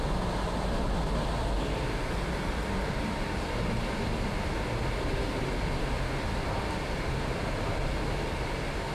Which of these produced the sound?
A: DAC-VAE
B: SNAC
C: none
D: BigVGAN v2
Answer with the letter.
C